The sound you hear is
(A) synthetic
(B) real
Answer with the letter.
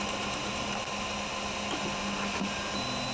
B